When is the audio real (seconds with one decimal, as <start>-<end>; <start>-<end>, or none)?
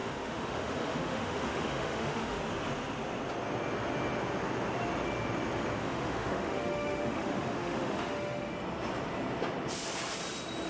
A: 2.4-5.8; 8.5-10.7